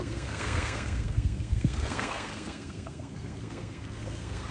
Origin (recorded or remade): remade